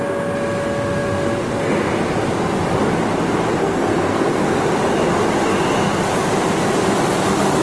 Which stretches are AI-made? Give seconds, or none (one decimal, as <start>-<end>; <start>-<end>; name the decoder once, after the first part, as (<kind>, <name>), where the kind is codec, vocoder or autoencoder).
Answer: 3.6-4.6 (codec, SNAC)